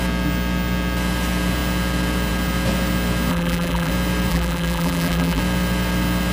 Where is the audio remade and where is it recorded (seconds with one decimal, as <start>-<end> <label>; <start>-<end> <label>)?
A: 0.0-3.3 recorded; 3.3-3.9 remade; 3.9-4.3 recorded; 4.3-5.4 remade; 5.4-6.3 recorded